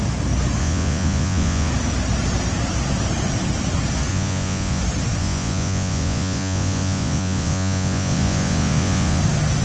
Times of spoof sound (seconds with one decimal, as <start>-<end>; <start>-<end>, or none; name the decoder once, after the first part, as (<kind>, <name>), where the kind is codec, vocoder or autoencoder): 0.6-1.7 (vocoder, Vocos); 4.1-4.8; 5.2-9.2

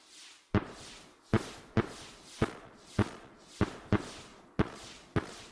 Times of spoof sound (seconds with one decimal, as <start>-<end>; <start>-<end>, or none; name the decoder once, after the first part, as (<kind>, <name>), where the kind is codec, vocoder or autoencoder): 2.4-3.6 (vocoder, Vocos); 4.3-5.5

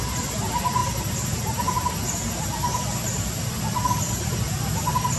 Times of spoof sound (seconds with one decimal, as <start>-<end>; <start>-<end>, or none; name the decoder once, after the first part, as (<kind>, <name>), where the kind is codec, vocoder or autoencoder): none

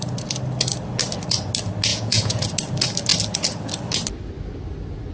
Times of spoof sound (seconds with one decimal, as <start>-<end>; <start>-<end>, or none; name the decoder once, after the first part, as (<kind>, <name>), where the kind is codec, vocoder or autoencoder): 1.9-2.4 (vocoder, Vocos)

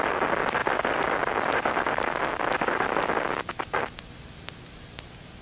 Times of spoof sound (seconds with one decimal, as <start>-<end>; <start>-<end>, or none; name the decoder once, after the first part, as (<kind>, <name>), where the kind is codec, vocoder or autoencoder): none

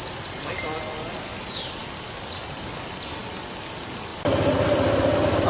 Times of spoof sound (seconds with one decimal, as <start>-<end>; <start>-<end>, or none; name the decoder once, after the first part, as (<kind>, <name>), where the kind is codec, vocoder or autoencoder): none